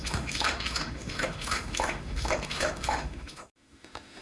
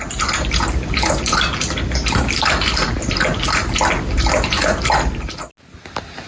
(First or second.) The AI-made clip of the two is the first